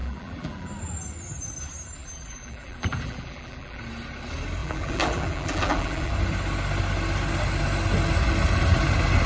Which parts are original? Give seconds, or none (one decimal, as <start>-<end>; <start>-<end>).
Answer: 0.7-2.0; 3.8-4.6; 6.1-9.3